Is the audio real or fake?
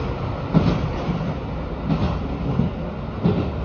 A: real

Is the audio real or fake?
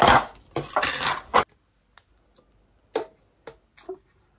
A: real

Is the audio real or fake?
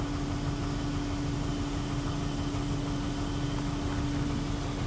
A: real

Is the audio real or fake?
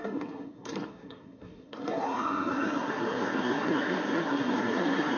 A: fake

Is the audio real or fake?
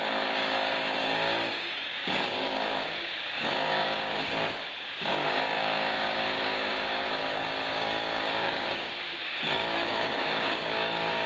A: fake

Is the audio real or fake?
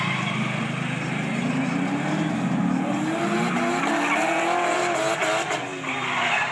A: real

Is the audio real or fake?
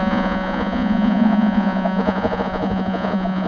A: fake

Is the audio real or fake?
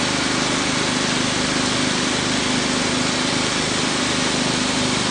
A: real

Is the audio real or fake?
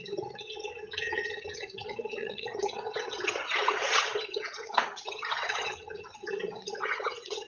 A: fake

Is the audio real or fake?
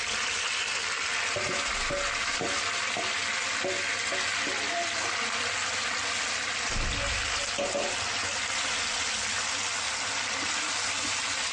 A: real